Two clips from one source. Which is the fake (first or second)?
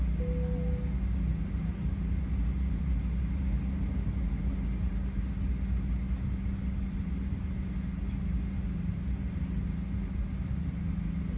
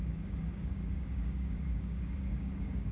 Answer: second